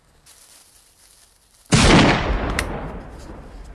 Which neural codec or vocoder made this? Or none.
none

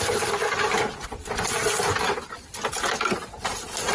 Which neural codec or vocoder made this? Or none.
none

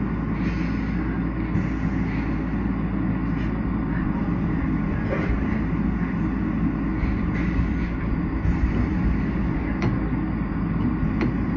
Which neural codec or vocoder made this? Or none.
none